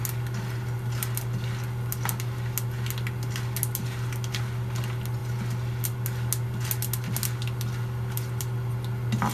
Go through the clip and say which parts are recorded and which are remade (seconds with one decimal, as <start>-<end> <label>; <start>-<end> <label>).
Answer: 0.0-9.3 recorded